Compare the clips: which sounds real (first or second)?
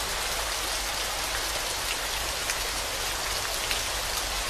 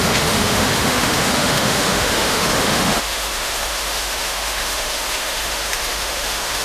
first